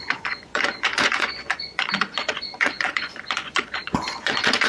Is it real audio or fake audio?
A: fake